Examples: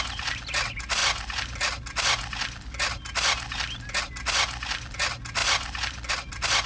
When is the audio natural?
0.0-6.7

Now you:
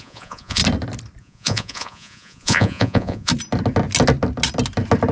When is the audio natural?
0.6-1.2; 3.3-5.1